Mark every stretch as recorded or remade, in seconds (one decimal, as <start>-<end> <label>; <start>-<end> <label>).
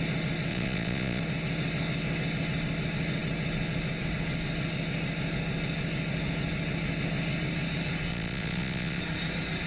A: 0.0-0.5 recorded; 0.5-1.2 remade; 1.2-8.1 recorded; 8.1-9.0 remade; 9.0-9.7 recorded